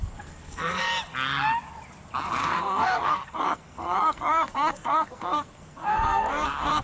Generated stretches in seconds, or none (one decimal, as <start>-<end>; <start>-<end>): 0.0-0.8; 2.4-6.8